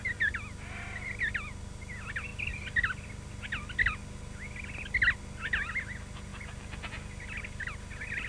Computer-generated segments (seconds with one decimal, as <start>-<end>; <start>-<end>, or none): none